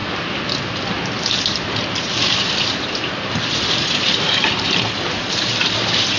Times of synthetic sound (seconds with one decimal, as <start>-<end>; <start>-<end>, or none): 1.4-6.2